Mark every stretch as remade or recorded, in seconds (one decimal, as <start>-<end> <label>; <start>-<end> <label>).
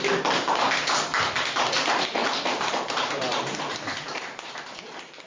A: 0.0-2.2 recorded; 2.2-4.5 remade; 4.5-5.3 recorded